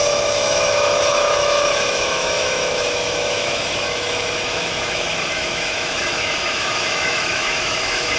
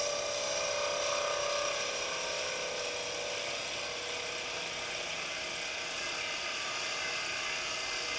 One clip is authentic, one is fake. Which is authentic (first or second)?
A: second